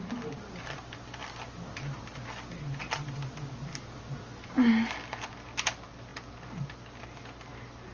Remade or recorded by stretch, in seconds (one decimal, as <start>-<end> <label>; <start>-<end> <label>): 0.0-7.9 recorded